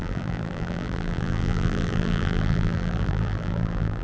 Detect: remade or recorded remade